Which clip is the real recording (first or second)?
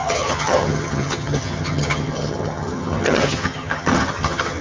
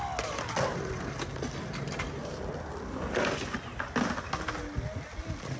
second